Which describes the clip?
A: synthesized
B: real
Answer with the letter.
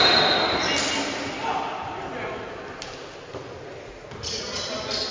B